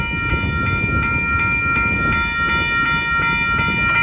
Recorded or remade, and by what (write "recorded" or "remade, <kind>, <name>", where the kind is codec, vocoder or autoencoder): recorded